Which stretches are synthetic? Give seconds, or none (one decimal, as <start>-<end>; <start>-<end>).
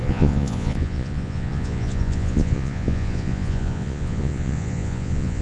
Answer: 0.0-5.4